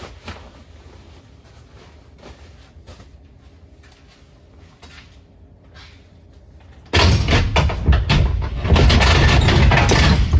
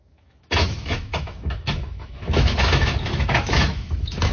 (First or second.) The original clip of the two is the first